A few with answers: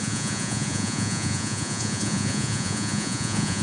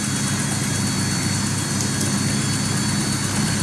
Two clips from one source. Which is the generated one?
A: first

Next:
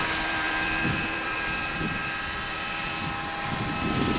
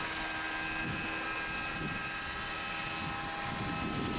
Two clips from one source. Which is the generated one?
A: first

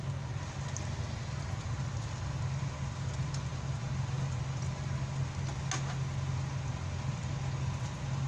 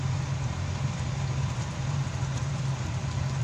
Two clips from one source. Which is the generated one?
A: second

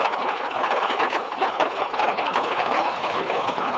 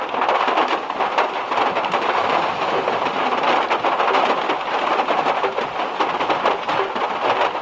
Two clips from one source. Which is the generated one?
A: first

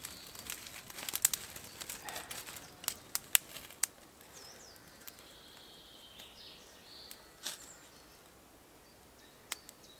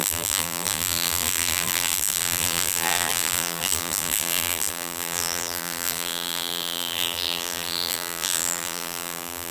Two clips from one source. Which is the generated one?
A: second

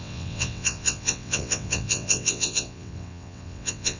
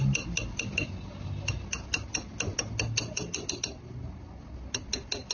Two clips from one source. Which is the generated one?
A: first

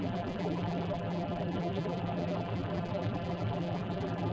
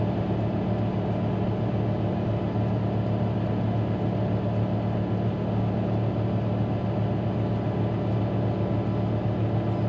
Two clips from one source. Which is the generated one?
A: first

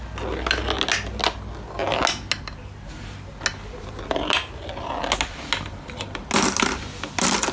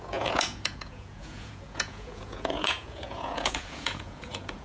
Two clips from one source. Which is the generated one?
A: second